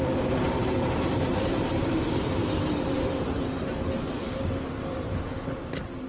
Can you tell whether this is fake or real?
fake